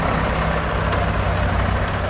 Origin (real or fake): real